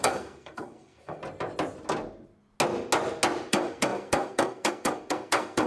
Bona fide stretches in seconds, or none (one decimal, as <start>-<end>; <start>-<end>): 1.2-3.5